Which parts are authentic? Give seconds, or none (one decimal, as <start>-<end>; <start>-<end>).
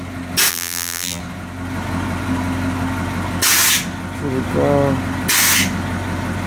0.0-0.5; 1.2-6.5